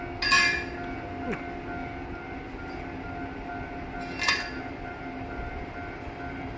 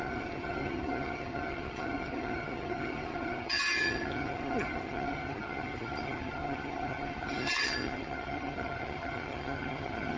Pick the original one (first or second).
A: first